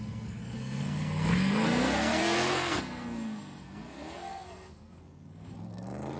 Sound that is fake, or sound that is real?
fake